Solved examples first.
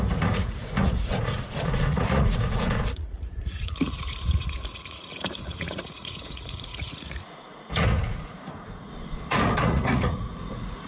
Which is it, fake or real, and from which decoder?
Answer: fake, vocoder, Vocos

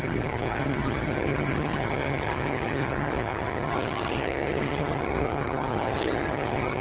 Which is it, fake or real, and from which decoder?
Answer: fake, vocoder, HiFi-GAN